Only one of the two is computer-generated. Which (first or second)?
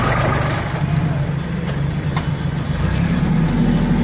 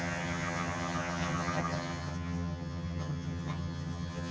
second